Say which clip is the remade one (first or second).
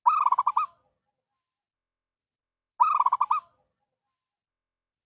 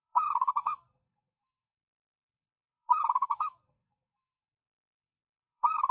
second